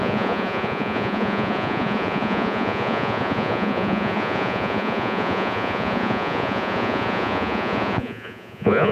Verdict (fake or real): fake